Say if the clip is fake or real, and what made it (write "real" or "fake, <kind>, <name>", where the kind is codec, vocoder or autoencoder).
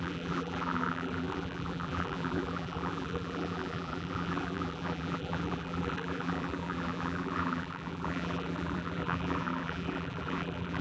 fake, vocoder, BigVGAN v2